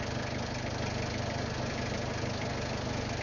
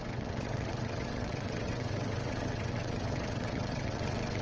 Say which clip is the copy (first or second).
second